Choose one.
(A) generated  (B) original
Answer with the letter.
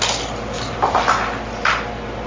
B